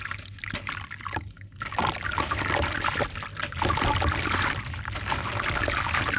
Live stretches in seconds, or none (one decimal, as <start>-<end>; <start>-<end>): 0.0-6.2